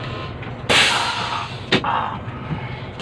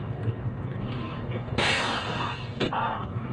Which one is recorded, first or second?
first